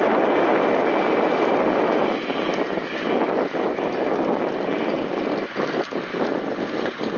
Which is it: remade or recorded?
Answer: recorded